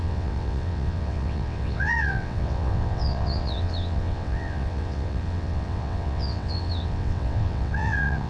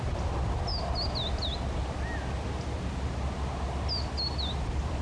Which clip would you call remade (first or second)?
first